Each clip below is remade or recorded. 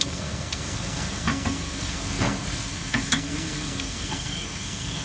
remade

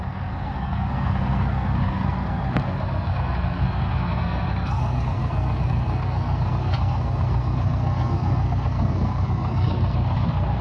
remade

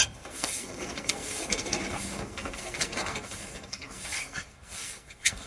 remade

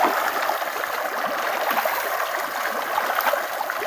recorded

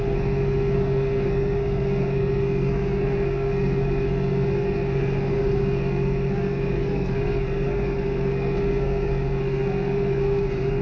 remade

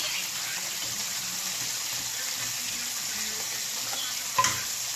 recorded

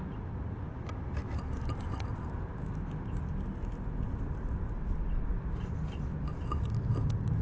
recorded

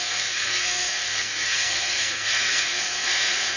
remade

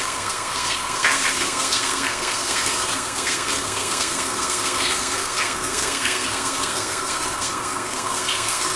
remade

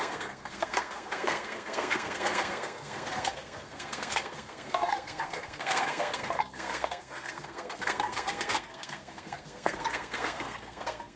remade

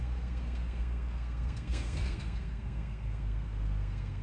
remade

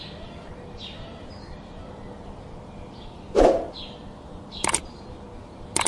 recorded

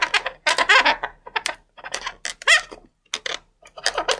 recorded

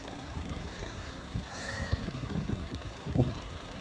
remade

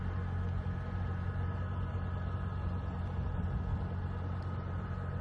recorded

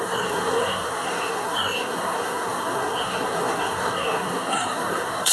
remade